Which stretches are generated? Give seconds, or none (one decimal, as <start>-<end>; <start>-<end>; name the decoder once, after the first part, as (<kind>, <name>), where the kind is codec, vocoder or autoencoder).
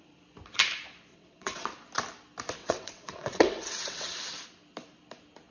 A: 1.1-1.7 (vocoder, WaveNeXt); 2.6-4.2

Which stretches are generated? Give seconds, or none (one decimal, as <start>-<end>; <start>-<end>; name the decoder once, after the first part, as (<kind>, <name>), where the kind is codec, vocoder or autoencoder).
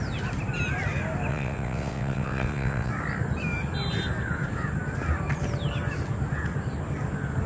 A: 1.3-2.9 (vocoder, WaveNeXt)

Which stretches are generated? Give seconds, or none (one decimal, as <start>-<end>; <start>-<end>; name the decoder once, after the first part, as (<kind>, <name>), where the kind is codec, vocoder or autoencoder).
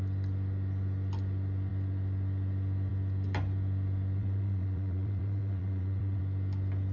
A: 4.2-6.2 (vocoder, WaveNeXt)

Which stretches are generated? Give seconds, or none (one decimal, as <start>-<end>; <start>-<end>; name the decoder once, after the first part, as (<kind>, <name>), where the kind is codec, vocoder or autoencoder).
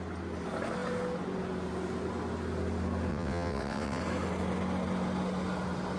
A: 3.1-4.0 (vocoder, WaveNeXt)